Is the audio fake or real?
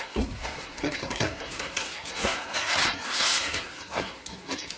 fake